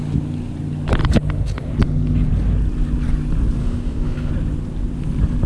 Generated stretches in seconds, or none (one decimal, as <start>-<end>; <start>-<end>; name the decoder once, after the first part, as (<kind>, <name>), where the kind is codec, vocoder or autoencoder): 3.6-4.3 (autoencoder, DAC-VAE)